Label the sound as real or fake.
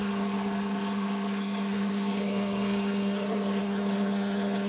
fake